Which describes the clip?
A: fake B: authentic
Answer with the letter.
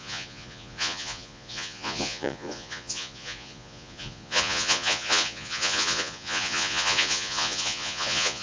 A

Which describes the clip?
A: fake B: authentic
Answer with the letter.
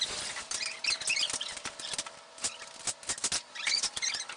B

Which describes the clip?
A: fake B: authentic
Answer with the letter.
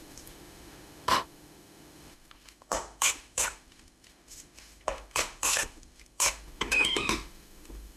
A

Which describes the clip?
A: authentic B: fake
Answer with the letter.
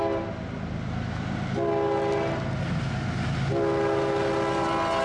A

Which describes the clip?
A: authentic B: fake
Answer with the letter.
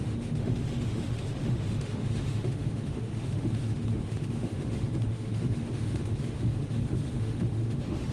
B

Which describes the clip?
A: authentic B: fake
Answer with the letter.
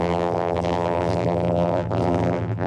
B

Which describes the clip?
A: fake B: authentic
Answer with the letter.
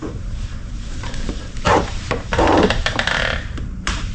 A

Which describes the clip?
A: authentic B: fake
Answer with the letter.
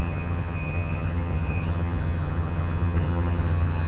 B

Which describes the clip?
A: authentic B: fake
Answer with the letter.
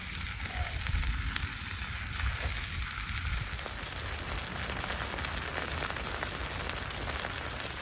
A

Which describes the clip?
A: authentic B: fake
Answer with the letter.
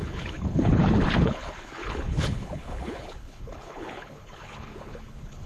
B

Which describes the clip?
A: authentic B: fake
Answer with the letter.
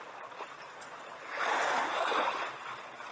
A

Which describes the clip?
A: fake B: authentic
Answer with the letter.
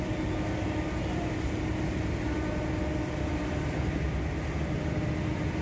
B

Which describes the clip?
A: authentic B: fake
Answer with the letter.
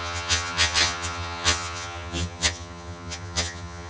B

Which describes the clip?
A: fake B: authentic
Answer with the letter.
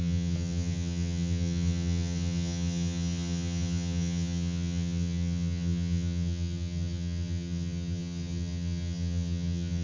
A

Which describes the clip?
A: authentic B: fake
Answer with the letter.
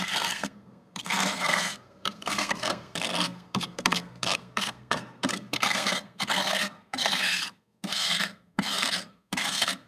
B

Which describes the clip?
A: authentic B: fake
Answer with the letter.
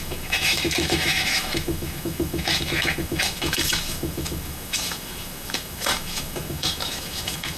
B